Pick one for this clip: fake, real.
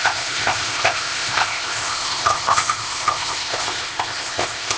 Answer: fake